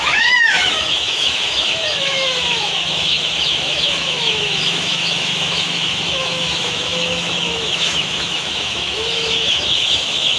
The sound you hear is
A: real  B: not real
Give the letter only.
B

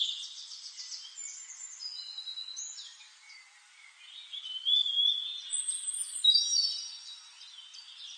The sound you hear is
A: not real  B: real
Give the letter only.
B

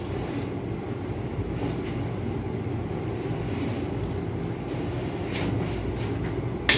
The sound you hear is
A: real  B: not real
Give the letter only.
A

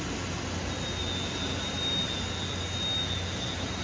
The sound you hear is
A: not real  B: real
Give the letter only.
B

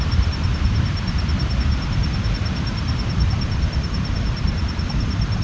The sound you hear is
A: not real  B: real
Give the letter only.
A